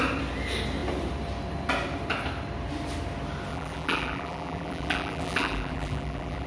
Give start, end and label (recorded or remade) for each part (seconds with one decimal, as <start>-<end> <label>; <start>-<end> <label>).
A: 0.0-3.5 recorded; 3.5-6.5 remade